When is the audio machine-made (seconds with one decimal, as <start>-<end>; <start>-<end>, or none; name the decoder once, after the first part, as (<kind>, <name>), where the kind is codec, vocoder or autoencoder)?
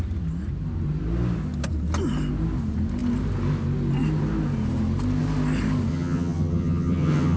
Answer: 5.9-7.4 (vocoder, HiFi-GAN)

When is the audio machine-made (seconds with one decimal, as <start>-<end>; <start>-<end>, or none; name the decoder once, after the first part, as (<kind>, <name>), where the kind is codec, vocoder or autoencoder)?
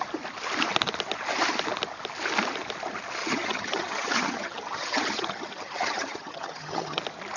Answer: 3.2-7.0 (vocoder, HiFi-GAN)